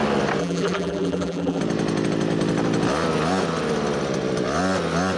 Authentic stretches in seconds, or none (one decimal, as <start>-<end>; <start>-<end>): 0.0-0.4; 1.6-5.2